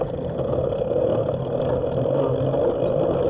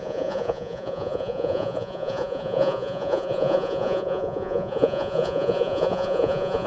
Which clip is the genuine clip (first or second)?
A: first